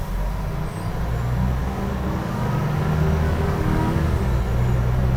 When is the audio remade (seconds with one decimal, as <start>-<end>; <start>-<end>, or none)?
1.6-4.2